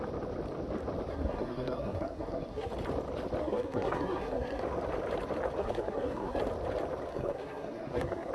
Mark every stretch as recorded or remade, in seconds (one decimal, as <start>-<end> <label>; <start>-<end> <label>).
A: 0.0-1.1 recorded; 1.1-2.7 remade; 2.7-3.4 recorded; 3.4-4.6 remade; 4.6-5.6 recorded; 5.6-6.4 remade; 6.4-7.1 recorded; 7.1-8.3 remade